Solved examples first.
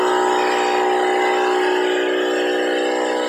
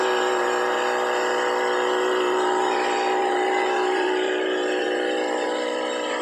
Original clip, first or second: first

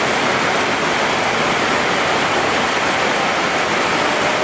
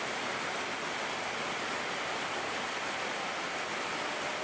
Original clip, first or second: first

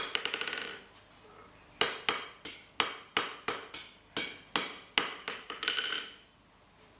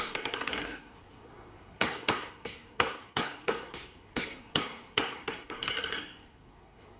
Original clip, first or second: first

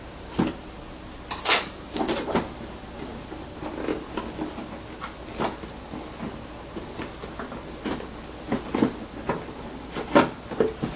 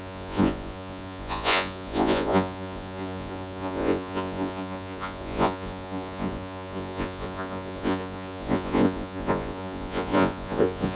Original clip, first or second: first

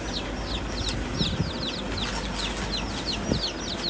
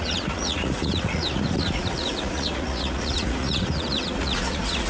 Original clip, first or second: first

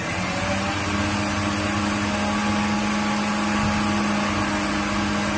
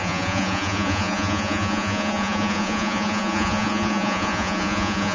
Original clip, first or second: first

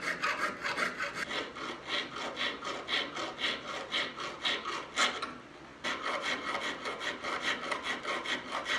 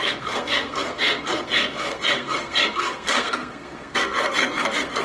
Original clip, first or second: first